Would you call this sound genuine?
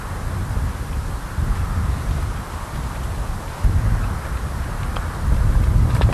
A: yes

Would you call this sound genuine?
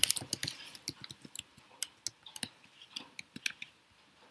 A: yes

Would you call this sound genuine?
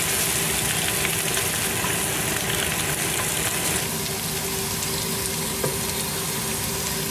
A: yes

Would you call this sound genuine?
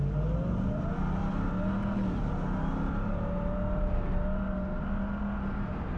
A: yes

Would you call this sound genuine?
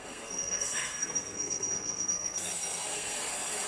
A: no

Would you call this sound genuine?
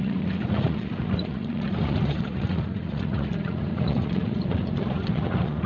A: no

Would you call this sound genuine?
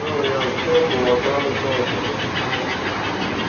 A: yes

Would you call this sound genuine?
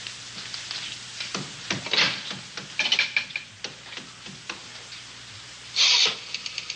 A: yes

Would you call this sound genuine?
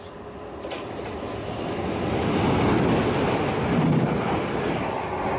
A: yes